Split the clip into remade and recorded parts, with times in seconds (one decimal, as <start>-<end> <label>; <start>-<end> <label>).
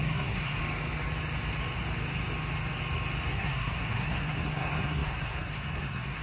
0.0-0.6 remade; 0.6-3.3 recorded; 3.3-6.2 remade